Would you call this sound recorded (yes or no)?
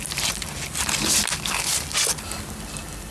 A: yes